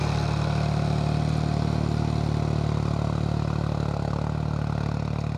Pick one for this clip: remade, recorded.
recorded